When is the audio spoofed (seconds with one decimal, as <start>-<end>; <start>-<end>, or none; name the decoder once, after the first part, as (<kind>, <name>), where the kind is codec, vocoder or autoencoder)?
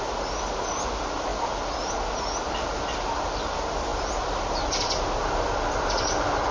none